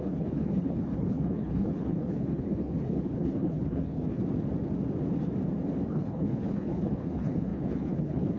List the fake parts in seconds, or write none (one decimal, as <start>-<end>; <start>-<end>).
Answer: 0.0-4.2; 5.9-8.4